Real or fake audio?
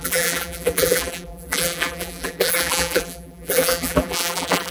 fake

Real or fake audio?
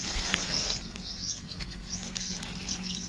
fake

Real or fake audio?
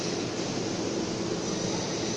real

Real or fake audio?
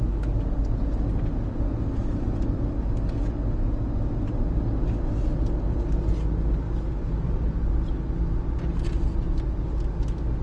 real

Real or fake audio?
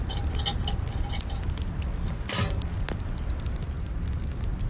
real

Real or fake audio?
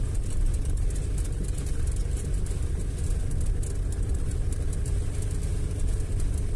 real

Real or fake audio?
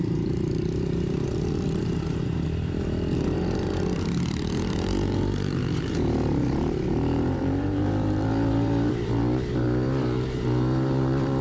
fake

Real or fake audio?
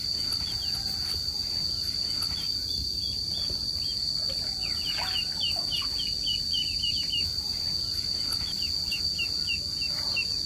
real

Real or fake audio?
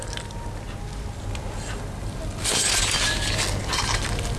real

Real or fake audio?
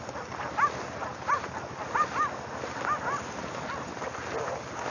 real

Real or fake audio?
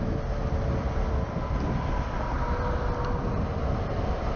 real